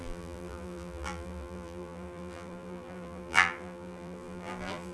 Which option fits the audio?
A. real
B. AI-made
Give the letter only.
B